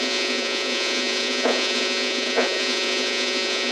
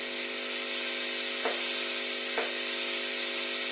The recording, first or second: second